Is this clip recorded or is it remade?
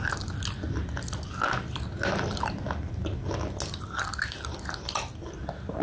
recorded